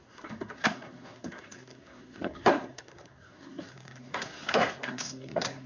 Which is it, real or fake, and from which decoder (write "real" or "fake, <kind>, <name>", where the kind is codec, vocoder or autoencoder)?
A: fake, codec, SNAC